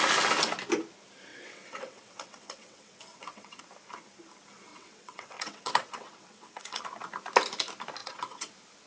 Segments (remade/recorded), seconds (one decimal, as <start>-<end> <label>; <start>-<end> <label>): 0.0-1.3 recorded; 1.3-3.6 remade; 3.6-4.7 recorded; 4.7-6.8 remade; 6.8-8.0 recorded; 8.0-8.5 remade; 8.5-8.9 recorded